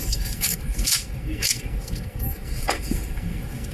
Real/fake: fake